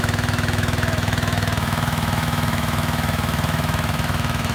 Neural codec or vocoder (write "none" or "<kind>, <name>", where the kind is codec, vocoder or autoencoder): autoencoder, DAC-VAE